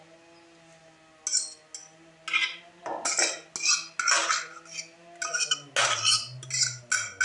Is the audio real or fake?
real